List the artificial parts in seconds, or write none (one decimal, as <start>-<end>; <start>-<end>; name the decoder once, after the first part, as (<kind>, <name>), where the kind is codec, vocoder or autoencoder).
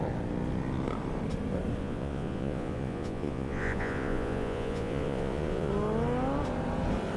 1.8-5.7 (vocoder, Vocos)